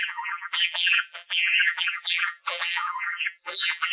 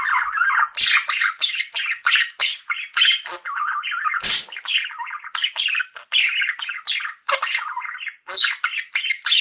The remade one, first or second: first